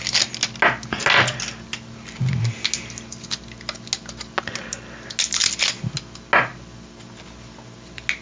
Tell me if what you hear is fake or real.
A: real